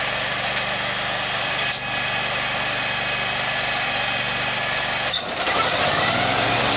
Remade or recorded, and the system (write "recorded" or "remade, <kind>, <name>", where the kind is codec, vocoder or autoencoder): remade, vocoder, BigVGAN v2